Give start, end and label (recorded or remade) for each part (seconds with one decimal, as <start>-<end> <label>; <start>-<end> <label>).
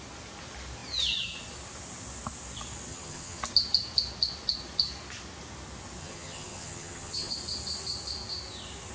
0.0-2.9 recorded; 2.9-3.4 remade; 3.4-6.0 recorded; 6.0-7.3 remade; 7.3-8.9 recorded